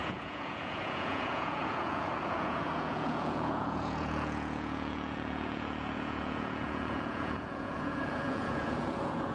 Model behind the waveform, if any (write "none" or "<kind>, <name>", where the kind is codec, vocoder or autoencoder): vocoder, Vocos